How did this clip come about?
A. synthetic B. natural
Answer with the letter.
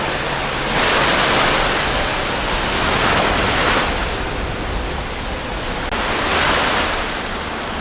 B